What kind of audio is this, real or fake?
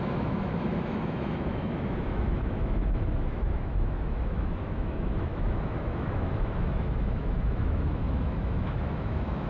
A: fake